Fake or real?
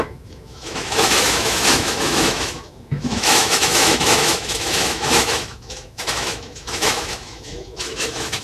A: fake